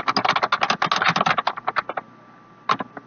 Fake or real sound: real